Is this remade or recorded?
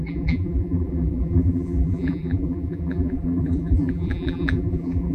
remade